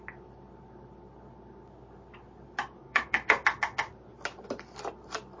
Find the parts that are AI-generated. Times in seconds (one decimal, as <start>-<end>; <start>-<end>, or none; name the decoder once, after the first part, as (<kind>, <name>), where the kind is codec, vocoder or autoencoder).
2.8-3.4 (codec, DAC)